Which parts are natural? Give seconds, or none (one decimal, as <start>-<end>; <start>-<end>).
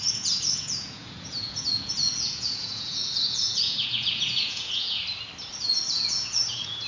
5.0-5.6